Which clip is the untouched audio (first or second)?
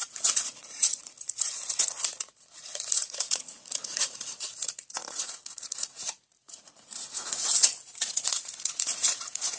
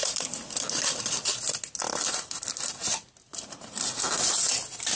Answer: second